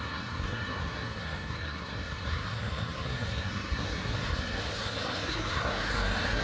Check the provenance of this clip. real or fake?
fake